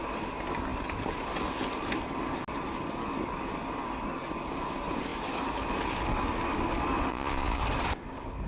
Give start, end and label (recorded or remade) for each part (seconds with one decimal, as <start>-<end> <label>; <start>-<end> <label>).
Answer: 0.0-7.1 recorded; 7.1-7.6 remade; 7.6-8.5 recorded